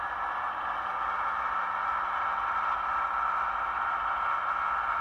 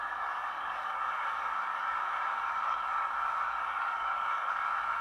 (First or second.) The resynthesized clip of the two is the second